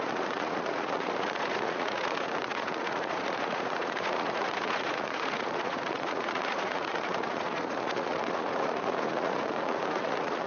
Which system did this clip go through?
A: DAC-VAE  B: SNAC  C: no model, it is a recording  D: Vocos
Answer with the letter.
D